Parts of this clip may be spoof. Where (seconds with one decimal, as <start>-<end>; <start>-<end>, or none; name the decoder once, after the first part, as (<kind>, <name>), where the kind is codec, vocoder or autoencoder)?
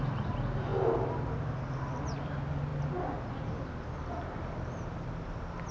none